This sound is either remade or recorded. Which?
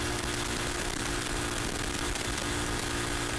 recorded